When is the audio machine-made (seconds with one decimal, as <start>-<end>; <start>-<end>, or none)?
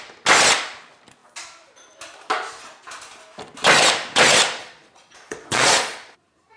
4.6-6.6